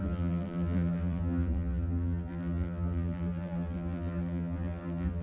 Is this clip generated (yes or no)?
yes